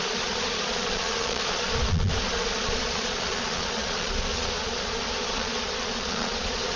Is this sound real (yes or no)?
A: no